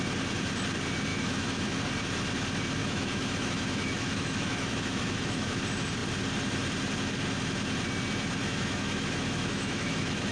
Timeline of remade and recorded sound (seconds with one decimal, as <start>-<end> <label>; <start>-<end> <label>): 0.0-1.1 recorded; 1.1-1.8 remade; 1.8-2.8 recorded; 2.8-5.6 remade; 5.6-8.4 recorded; 8.4-10.3 remade

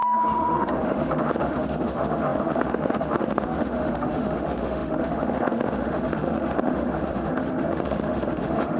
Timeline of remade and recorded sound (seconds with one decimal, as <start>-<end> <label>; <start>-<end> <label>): 0.0-8.8 remade

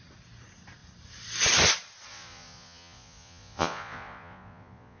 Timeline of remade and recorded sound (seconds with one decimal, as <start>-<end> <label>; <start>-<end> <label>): 0.0-2.1 recorded; 2.1-5.0 remade

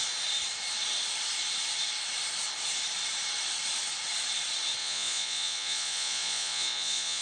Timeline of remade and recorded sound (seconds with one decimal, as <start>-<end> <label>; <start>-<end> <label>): 0.0-4.8 recorded; 4.8-7.2 remade

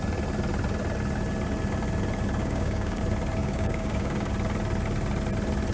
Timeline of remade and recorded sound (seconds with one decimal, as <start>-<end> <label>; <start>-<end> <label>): 0.0-2.4 recorded; 2.4-3.0 remade; 3.0-3.4 recorded; 3.4-4.3 remade; 4.3-5.7 recorded

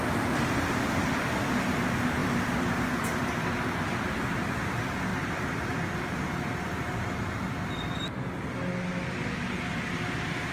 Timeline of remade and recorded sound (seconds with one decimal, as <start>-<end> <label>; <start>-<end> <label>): 0.0-5.1 recorded; 5.1-7.7 remade; 7.7-10.5 recorded

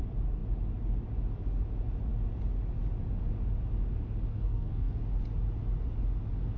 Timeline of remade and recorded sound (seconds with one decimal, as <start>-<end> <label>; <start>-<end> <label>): 0.0-4.3 recorded; 4.3-5.0 remade; 5.0-6.6 recorded